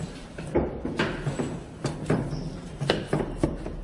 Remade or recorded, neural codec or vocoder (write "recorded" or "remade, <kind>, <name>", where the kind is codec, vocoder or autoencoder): recorded